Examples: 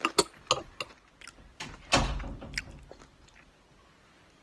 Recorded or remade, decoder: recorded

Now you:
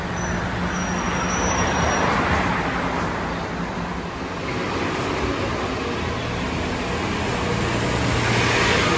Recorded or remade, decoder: recorded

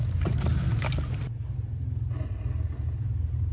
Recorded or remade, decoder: recorded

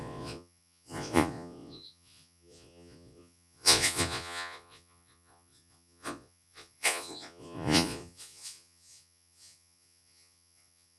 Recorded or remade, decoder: remade, vocoder, Vocos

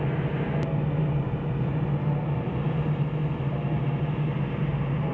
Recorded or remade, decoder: recorded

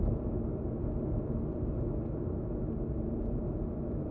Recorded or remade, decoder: recorded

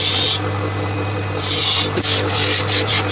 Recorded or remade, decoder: recorded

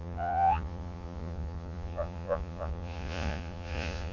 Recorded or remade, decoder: remade, vocoder, Vocos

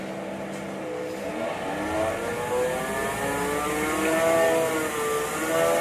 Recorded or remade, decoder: recorded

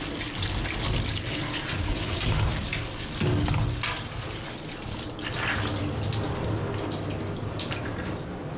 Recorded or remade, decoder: recorded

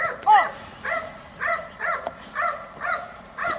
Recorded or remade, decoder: remade, vocoder, Vocos